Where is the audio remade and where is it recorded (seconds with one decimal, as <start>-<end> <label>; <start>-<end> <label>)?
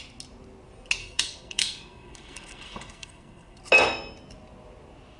0.0-1.0 recorded; 1.0-3.6 remade; 3.6-5.2 recorded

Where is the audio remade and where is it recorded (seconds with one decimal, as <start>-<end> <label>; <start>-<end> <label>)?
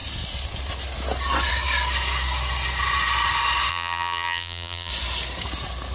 0.0-3.7 recorded; 3.7-4.9 remade; 4.9-5.9 recorded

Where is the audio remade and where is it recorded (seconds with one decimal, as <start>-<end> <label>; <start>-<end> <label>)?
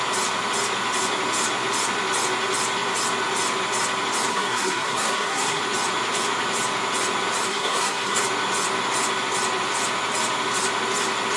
0.0-4.3 recorded; 4.3-5.6 remade; 5.6-7.5 recorded; 7.5-8.2 remade; 8.2-11.4 recorded